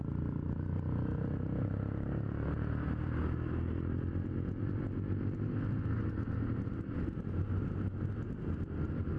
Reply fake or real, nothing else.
fake